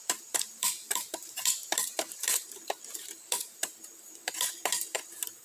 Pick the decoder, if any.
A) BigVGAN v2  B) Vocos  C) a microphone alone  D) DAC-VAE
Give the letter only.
A